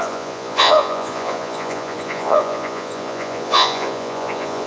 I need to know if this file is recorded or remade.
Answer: remade